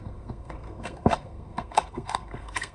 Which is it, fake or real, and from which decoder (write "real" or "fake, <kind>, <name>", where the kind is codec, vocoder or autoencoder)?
fake, codec, SNAC